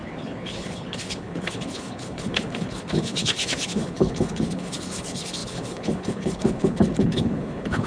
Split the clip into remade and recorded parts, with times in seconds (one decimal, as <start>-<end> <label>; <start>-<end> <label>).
0.0-7.9 remade